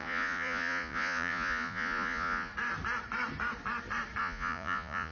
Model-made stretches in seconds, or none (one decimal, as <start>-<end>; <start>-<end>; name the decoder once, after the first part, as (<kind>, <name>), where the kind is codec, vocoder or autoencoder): 0.0-2.5 (vocoder, Vocos); 4.2-5.1